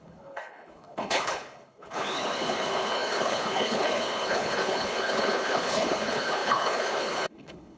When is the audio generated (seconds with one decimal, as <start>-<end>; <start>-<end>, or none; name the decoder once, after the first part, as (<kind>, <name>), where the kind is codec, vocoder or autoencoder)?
0.0-7.8 (codec, HILCodec)